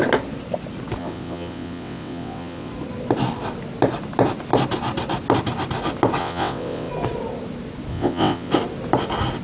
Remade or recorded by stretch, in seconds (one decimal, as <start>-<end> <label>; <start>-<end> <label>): 0.0-1.0 recorded; 1.0-2.7 remade; 2.7-6.2 recorded; 6.2-6.9 remade; 6.9-7.9 recorded; 7.9-8.5 remade; 8.5-9.4 recorded